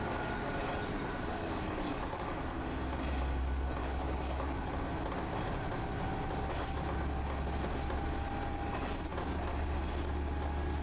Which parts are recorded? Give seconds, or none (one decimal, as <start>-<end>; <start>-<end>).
0.0-1.3; 2.6-3.8; 4.7-10.8